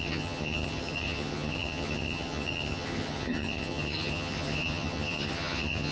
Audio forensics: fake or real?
fake